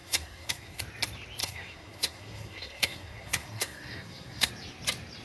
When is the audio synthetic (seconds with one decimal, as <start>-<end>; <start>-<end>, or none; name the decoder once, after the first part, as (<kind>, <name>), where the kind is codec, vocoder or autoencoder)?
0.0-0.8 (codec, SNAC); 1.4-4.5